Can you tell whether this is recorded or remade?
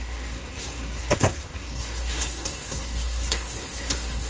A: remade